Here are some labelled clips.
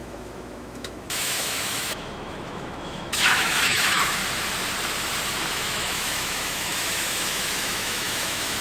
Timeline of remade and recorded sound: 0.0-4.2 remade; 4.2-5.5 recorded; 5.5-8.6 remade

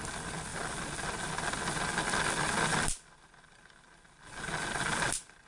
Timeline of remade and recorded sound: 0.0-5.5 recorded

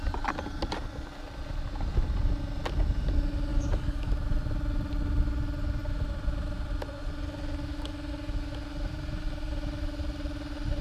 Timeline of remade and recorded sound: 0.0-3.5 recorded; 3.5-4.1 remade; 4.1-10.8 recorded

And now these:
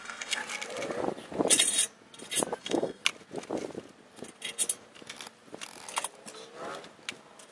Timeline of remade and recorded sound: 0.0-0.4 remade; 0.4-2.6 recorded; 2.6-3.0 remade; 3.0-7.5 recorded

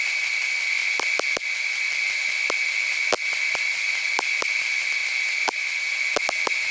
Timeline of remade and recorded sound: 0.0-6.7 recorded

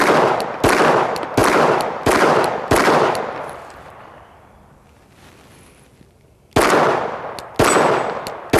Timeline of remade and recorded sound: 0.0-1.4 recorded; 1.4-6.4 remade; 6.4-8.6 recorded

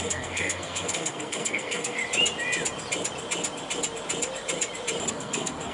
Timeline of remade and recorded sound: 0.0-2.0 remade; 2.0-5.1 recorded; 5.1-5.7 remade